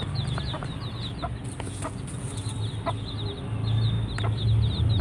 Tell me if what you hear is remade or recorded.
recorded